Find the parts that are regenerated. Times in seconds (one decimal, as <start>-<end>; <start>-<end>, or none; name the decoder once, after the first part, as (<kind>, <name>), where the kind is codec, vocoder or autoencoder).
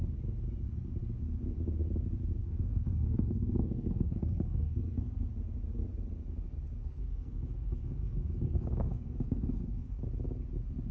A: 2.4-5.3 (codec, SNAC); 6.8-10.0